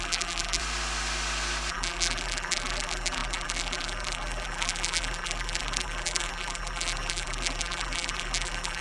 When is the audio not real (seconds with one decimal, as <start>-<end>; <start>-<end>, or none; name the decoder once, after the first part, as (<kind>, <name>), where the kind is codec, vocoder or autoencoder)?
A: 0.0-0.6 (vocoder, BigVGAN v2); 1.7-8.8